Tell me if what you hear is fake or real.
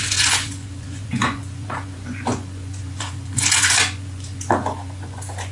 fake